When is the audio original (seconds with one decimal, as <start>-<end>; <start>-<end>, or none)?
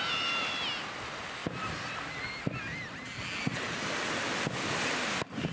0.0-5.5